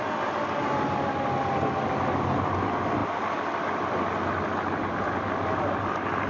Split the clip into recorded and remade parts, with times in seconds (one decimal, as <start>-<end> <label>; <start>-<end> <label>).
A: 0.0-6.3 recorded